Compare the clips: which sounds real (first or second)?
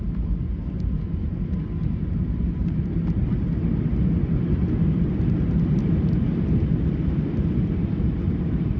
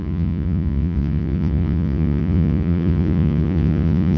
first